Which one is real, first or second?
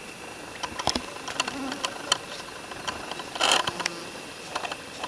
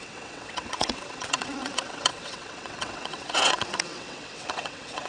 first